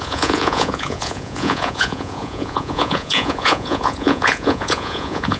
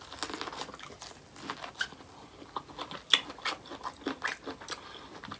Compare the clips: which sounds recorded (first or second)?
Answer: second